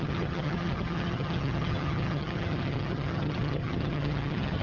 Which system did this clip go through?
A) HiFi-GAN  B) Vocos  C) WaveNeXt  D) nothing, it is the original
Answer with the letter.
A